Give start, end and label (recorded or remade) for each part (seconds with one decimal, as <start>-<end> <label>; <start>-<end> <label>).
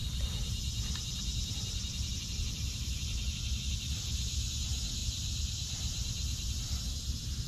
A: 0.0-4.5 remade; 4.5-5.0 recorded; 5.0-6.9 remade; 6.9-7.5 recorded